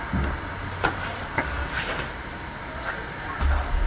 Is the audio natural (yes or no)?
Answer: yes